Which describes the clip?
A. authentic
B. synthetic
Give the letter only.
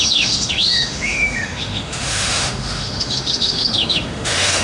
B